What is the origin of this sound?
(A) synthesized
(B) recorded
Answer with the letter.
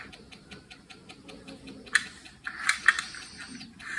B